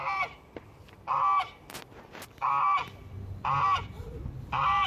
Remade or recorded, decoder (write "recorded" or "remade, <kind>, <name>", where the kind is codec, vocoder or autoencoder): recorded